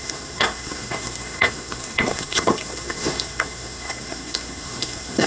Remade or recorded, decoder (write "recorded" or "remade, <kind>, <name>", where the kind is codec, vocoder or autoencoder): remade, codec, SNAC